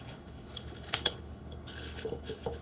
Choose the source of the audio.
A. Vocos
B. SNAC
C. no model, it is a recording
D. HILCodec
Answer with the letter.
D